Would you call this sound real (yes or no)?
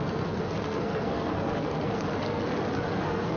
no